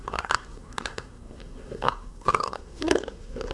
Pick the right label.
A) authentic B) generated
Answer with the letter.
B